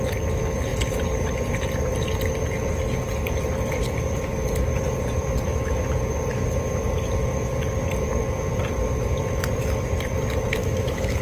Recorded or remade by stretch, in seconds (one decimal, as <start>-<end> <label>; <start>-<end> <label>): 0.0-10.6 recorded; 10.6-11.2 remade